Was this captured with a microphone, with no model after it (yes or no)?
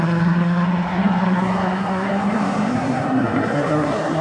no